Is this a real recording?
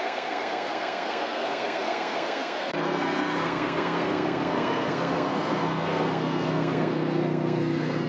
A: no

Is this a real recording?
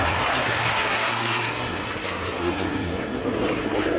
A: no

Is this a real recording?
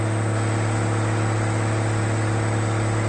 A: yes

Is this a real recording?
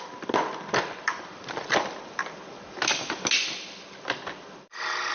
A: yes